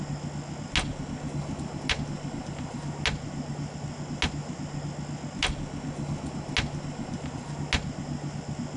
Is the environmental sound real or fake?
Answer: real